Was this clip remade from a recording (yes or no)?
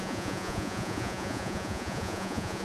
yes